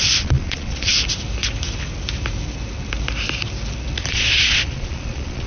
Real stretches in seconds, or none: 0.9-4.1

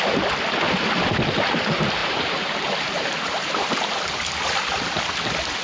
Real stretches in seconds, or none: 0.0-2.0; 3.9-5.6